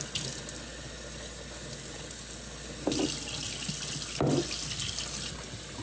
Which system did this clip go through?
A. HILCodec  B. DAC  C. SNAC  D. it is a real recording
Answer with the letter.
D